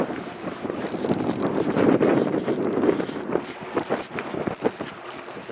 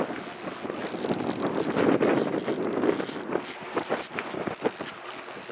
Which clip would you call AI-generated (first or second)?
first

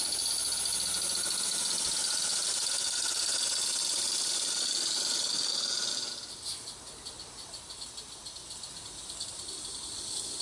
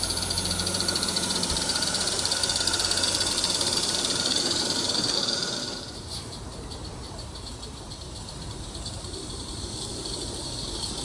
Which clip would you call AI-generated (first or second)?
second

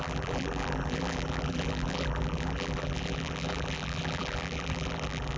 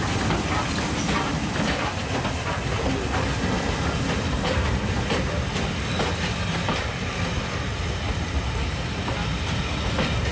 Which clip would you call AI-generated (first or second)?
first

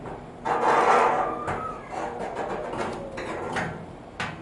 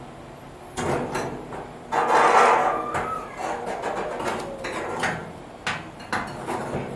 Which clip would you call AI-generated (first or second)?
first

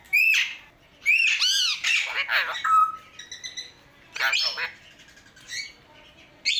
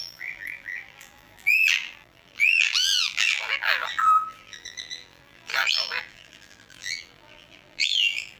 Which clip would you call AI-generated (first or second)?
second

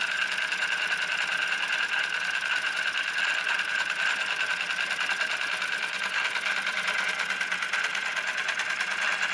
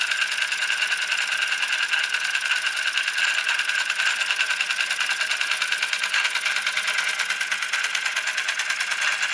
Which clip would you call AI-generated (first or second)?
first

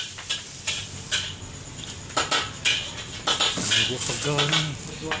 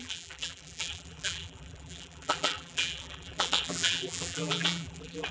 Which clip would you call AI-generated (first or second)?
second